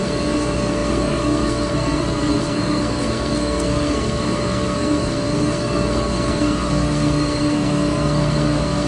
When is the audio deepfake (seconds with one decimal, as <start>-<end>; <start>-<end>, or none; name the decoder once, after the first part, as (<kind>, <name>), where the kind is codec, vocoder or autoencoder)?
0.0-8.9 (codec, SNAC)

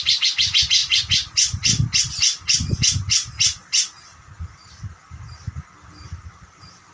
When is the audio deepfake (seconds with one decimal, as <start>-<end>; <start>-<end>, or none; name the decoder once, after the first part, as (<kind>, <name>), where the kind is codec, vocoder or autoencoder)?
none

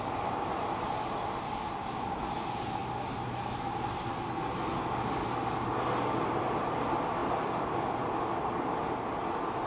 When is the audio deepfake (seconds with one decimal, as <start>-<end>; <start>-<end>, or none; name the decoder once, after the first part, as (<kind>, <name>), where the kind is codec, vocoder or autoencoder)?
none

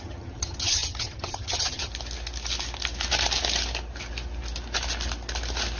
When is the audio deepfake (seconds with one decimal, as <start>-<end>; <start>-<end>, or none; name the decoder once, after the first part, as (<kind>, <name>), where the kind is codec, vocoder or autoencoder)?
0.0-1.9 (vocoder, HiFi-GAN)

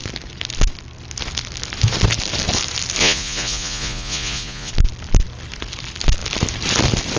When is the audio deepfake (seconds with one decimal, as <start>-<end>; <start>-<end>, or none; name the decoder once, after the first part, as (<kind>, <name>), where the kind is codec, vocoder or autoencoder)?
3.0-4.7 (vocoder, Vocos)

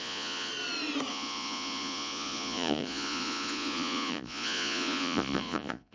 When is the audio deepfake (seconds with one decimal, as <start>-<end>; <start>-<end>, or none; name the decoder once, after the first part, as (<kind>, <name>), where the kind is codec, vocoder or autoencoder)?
0.0-0.5 (vocoder, Vocos); 1.1-5.9

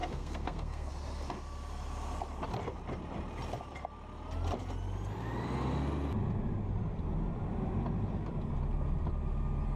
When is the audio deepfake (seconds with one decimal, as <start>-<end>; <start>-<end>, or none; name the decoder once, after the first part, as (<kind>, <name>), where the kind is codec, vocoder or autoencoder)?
0.0-0.9 (codec, SNAC)